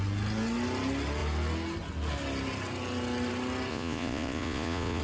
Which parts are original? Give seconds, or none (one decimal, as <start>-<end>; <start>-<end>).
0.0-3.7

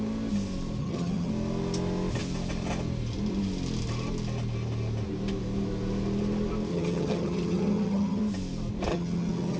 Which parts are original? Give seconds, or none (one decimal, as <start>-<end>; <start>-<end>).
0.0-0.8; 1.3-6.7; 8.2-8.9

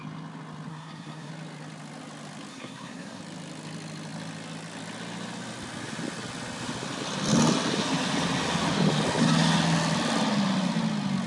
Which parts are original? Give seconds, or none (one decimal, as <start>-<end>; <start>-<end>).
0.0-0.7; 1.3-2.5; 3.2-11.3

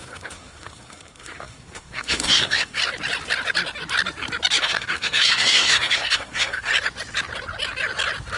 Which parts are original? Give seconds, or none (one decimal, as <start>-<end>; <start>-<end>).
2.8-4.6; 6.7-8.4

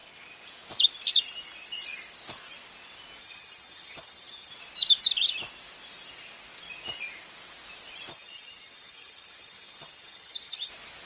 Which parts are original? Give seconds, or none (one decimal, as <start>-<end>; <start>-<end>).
0.0-3.2; 4.5-8.1; 10.7-11.1